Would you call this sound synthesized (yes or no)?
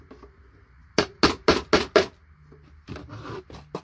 no